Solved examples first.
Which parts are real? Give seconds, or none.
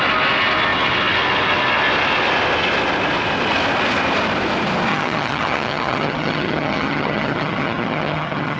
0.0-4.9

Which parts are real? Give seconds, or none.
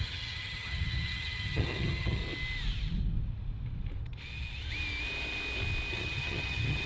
2.2-5.9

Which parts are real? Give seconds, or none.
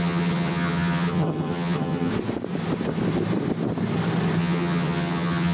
2.1-4.4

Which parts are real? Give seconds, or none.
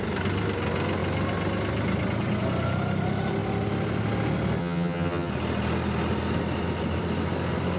0.0-4.6; 5.3-7.8